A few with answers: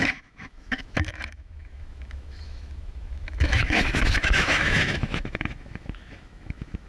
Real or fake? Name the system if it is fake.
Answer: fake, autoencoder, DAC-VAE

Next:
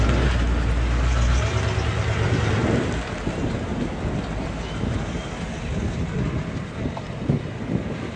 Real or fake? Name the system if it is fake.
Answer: real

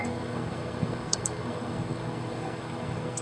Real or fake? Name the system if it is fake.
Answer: fake, codec, SNAC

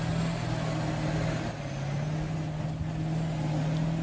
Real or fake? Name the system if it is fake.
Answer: real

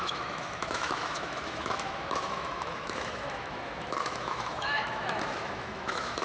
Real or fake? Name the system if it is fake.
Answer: fake, autoencoder, DAC-VAE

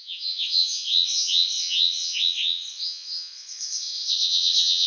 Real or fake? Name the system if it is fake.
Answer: fake, vocoder, WaveNeXt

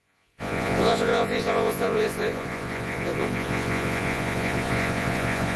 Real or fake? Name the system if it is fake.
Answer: fake, vocoder, Vocos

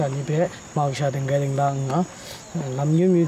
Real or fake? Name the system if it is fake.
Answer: real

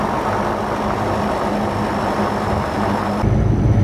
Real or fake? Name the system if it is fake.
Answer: real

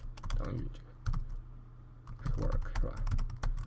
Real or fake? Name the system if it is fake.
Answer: real